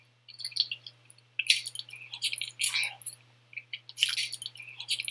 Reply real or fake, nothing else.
real